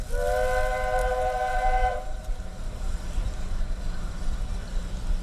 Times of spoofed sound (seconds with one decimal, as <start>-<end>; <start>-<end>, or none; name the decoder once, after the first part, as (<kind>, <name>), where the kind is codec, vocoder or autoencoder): 1.0-4.1 (vocoder, BigVGAN v2)

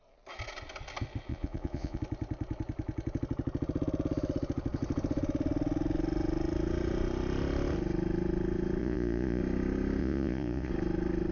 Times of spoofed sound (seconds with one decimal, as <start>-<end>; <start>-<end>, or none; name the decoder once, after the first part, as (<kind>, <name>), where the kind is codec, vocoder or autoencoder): 1.3-2.0 (vocoder, Vocos); 8.8-9.4; 10.0-10.7